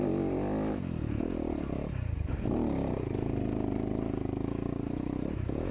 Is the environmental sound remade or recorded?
recorded